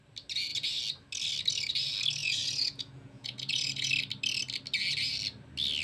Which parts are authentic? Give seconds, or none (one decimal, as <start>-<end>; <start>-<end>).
0.0-2.2; 3.9-5.8